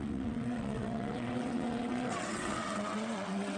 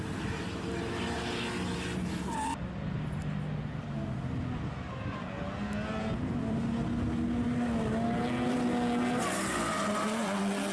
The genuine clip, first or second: second